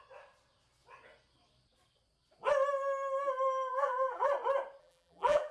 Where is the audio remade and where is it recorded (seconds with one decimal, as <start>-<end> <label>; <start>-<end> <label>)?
0.0-3.7 recorded; 3.7-4.3 remade; 4.3-4.8 recorded; 4.8-5.5 remade